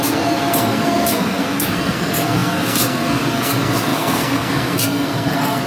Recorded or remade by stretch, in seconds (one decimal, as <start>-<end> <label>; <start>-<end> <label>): 0.0-5.7 remade